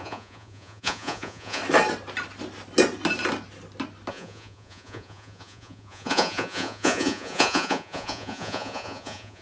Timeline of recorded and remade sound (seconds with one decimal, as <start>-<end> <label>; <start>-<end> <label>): 0.0-1.6 remade; 1.6-4.1 recorded; 4.1-9.4 remade